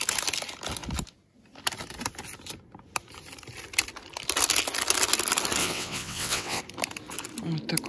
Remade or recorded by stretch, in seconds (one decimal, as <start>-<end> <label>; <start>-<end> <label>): 0.0-5.6 recorded; 5.6-6.6 remade; 6.6-7.9 recorded